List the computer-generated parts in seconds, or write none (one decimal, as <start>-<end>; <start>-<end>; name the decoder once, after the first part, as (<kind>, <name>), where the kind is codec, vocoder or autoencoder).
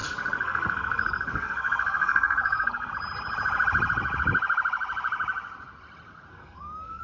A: 0.0-2.9 (codec, SNAC); 6.3-7.0